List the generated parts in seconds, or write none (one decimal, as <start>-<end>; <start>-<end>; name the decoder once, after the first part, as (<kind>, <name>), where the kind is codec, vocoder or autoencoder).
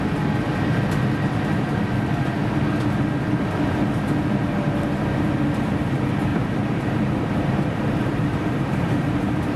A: 6.3-9.2 (vocoder, BigVGAN v2)